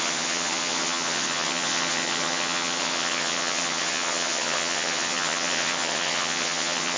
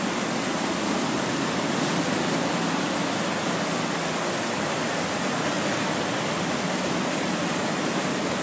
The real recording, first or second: second